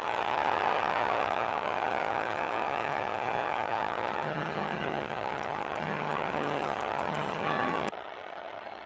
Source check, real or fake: fake